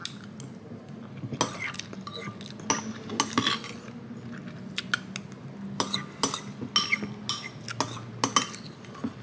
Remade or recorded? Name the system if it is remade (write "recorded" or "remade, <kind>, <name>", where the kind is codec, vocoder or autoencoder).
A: recorded